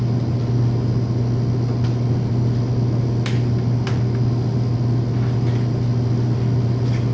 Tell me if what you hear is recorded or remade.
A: recorded